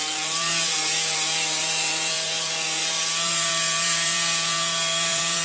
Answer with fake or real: fake